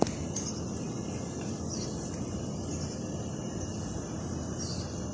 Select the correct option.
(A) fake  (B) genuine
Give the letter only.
B